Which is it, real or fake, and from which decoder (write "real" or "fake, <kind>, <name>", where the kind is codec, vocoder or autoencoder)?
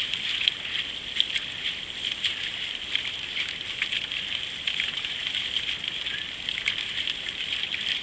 real